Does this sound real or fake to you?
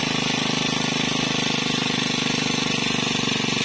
real